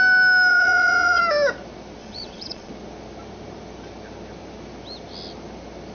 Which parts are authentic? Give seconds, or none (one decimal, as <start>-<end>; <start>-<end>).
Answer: 0.0-0.5; 1.2-2.0; 2.7-5.9